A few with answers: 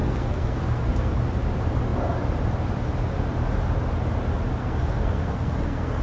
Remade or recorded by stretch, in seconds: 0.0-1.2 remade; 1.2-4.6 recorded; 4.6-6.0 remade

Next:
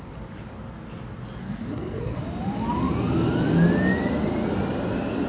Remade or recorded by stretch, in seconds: 0.0-1.4 recorded; 1.4-2.2 remade; 2.2-5.3 recorded